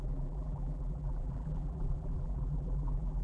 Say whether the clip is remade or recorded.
remade